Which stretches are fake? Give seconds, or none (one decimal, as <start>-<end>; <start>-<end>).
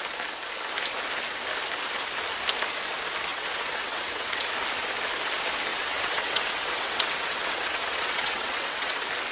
3.3-4.5; 5.7-8.9